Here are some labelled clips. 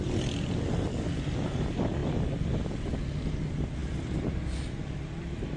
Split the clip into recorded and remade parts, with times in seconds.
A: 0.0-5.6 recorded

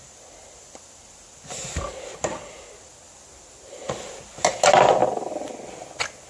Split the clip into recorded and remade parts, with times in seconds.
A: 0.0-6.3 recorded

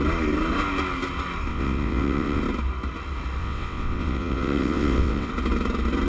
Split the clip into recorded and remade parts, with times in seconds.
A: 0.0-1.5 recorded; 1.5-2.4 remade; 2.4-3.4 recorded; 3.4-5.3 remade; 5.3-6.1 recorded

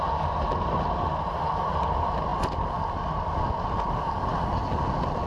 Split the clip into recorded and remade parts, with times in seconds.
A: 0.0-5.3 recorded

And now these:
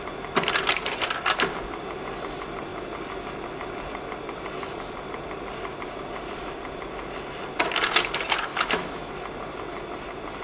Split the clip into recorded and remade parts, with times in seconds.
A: 0.0-8.5 recorded; 8.5-9.1 remade; 9.1-10.4 recorded

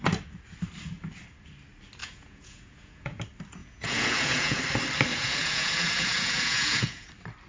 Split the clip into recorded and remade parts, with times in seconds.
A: 0.0-2.0 recorded; 2.0-3.2 remade; 3.2-3.6 recorded; 3.6-4.6 remade; 4.6-5.1 recorded; 5.1-7.1 remade; 7.1-7.5 recorded

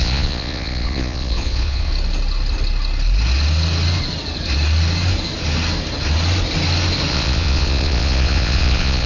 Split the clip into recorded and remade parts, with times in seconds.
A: 0.0-1.9 remade; 1.9-7.1 recorded; 7.1-9.1 remade

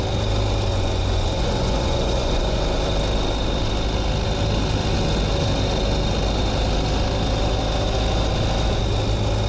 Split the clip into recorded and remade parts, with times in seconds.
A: 0.0-0.7 recorded; 0.7-2.6 remade; 2.6-9.5 recorded